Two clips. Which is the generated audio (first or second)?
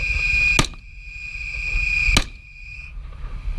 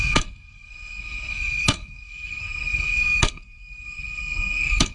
second